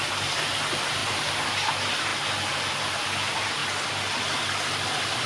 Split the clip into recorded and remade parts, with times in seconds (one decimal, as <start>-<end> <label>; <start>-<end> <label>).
0.0-5.3 recorded